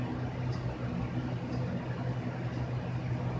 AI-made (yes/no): no